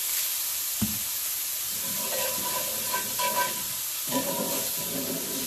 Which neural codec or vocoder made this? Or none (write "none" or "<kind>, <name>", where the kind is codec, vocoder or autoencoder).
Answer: none